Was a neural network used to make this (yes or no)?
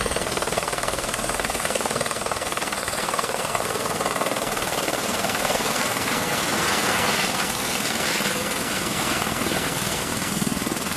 yes